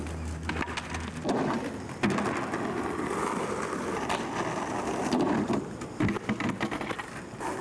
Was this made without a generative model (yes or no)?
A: yes